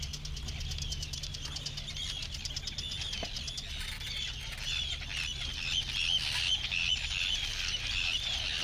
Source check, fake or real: real